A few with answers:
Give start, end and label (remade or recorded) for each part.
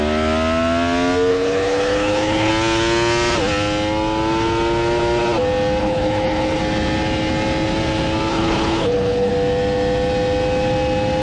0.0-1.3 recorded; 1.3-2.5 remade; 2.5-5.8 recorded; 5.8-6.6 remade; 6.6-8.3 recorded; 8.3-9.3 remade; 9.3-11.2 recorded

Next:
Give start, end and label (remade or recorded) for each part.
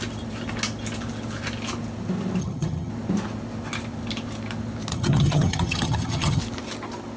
0.0-2.4 recorded; 2.4-2.9 remade; 2.9-4.9 recorded; 4.9-6.4 remade; 6.4-7.2 recorded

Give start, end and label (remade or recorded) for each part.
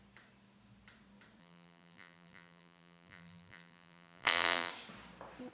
0.0-1.4 recorded; 1.4-4.7 remade; 4.7-5.5 recorded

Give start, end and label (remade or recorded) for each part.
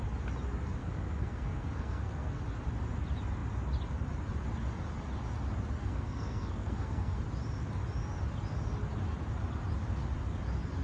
0.0-0.8 recorded; 0.8-2.4 remade; 2.4-5.8 recorded; 5.8-7.2 remade; 7.2-10.8 recorded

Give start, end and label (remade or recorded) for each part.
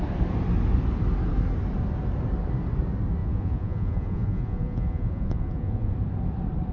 0.0-3.2 recorded; 3.2-5.9 remade; 5.9-6.7 recorded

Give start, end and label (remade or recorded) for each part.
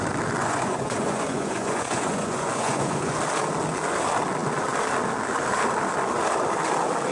0.0-0.4 recorded; 0.4-3.2 remade; 3.2-7.1 recorded